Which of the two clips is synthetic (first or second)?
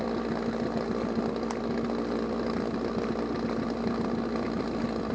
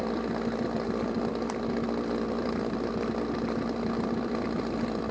second